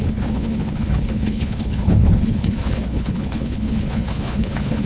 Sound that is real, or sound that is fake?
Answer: fake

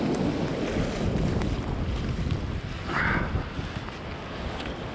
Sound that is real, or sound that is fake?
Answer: real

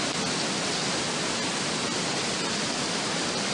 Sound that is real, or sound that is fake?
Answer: real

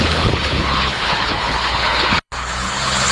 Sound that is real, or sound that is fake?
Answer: fake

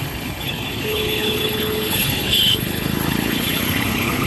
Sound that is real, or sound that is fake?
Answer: fake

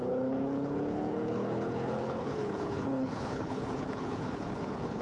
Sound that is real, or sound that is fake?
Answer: fake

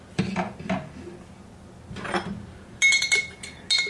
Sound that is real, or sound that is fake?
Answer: real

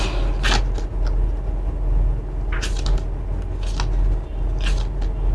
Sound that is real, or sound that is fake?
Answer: real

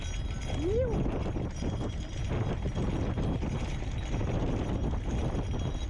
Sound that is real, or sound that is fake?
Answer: real